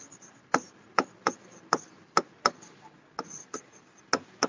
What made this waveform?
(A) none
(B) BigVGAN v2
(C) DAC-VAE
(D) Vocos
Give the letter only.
A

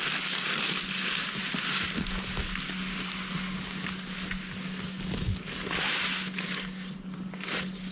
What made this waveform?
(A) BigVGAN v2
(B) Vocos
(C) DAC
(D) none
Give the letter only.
D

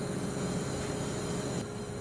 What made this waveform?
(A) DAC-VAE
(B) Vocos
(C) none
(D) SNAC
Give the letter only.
C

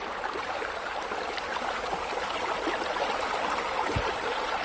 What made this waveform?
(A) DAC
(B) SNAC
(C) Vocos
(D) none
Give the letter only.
D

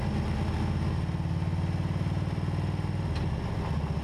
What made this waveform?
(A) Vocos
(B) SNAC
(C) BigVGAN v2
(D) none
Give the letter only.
D